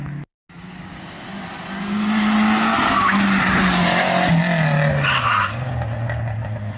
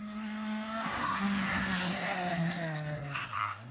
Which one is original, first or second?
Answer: first